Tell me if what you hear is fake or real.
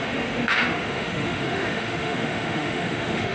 fake